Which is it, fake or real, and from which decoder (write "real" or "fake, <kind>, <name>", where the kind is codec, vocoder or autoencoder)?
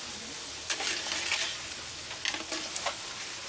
real